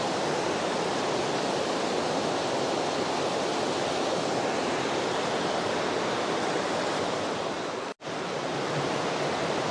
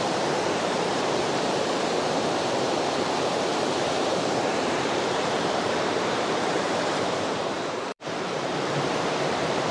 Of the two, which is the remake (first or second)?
second